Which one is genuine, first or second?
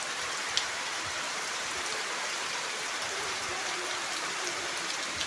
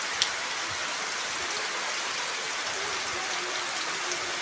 second